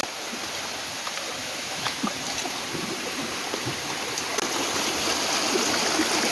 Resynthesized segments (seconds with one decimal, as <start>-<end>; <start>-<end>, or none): 1.4-2.0